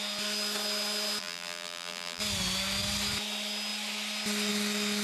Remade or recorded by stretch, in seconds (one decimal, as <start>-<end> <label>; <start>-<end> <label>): 0.0-1.2 recorded; 1.2-2.2 remade; 2.2-5.0 recorded